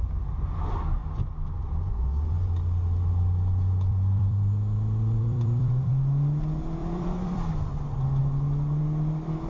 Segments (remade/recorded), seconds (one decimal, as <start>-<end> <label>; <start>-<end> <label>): 0.0-3.9 recorded; 3.9-5.9 remade; 5.9-6.8 recorded; 6.8-7.5 remade; 7.5-9.5 recorded